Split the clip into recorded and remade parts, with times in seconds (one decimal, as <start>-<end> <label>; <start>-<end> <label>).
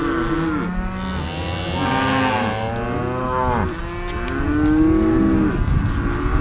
0.0-6.4 recorded